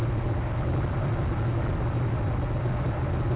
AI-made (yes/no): no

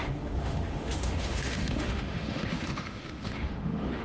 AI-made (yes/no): yes